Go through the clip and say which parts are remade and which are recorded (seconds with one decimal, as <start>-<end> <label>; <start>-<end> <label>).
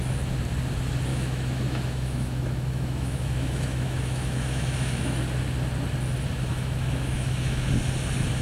0.0-1.1 recorded; 1.1-5.2 remade; 5.2-6.5 recorded; 6.5-7.7 remade; 7.7-8.4 recorded